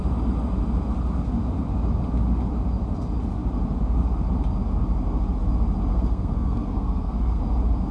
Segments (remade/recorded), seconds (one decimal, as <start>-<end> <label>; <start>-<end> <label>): 0.0-5.9 recorded; 5.9-7.4 remade; 7.4-7.9 recorded